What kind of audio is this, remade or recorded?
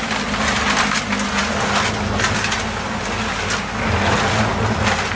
recorded